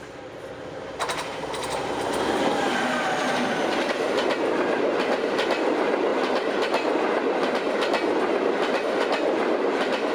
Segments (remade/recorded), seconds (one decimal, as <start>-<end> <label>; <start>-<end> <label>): 0.0-10.1 recorded